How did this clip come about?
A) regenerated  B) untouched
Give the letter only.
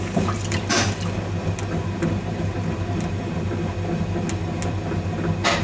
B